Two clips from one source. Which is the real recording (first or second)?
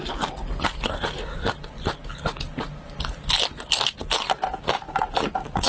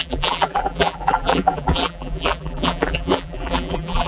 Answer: first